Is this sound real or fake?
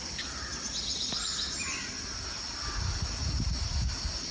real